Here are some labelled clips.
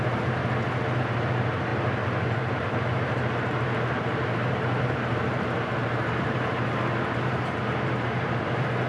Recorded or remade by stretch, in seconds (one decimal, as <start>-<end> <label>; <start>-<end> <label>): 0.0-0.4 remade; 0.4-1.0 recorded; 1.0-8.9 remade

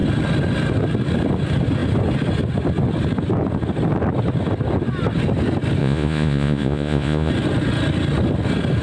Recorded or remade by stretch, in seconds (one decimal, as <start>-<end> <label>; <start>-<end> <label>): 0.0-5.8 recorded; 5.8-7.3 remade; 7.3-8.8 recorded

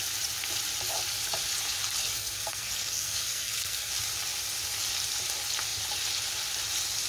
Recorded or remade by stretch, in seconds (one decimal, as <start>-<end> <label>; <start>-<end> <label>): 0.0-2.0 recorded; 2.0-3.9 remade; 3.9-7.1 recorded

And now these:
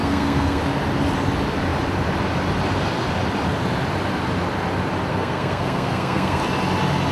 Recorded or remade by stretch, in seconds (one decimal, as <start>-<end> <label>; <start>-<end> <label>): 0.0-0.6 remade; 0.6-5.1 recorded; 5.1-6.4 remade; 6.4-7.1 recorded

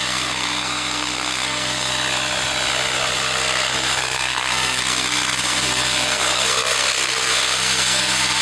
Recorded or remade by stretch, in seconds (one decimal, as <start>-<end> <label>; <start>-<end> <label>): 0.0-1.9 remade; 1.9-3.4 recorded; 3.4-8.4 remade

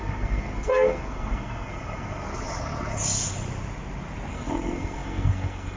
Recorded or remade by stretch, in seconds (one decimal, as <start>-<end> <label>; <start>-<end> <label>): 0.0-2.3 remade; 2.3-4.3 recorded; 4.3-5.8 remade